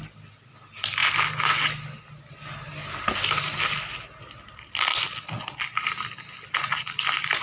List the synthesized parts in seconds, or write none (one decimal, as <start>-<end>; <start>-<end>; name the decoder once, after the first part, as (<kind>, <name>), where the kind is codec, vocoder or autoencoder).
none